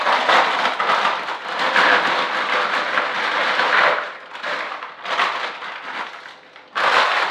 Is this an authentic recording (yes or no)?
yes